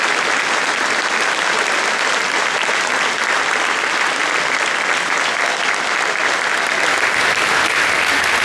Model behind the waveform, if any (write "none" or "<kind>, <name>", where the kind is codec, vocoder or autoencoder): none